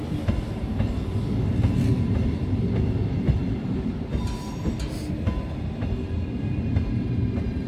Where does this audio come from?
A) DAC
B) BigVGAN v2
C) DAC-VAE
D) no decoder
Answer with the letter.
D